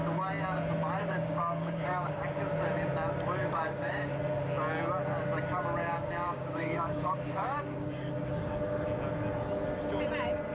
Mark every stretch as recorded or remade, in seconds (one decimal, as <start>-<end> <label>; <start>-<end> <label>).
0.0-1.0 recorded; 1.0-2.2 remade; 2.2-3.4 recorded; 3.4-4.1 remade; 4.1-5.8 recorded; 5.8-8.5 remade; 8.5-10.5 recorded